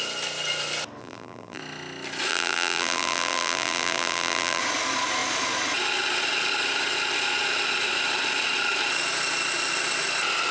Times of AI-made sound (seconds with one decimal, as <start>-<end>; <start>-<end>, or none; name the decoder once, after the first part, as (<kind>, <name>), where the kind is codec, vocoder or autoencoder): 1.0-1.6 (vocoder, BigVGAN v2); 2.3-4.6